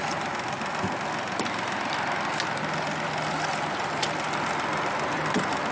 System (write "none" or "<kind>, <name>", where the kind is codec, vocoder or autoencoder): none